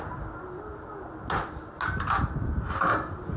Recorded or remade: recorded